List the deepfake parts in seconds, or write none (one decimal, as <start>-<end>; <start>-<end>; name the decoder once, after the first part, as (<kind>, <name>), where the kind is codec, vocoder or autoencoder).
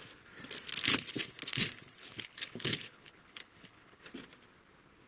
0.9-4.0 (codec, HILCodec)